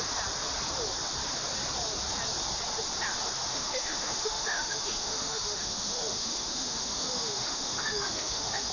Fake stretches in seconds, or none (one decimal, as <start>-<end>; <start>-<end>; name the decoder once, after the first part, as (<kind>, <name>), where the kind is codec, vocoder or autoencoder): 3.5-8.7 (autoencoder, DAC-VAE)